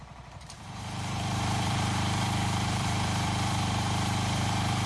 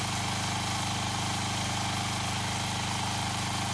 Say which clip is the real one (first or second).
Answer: second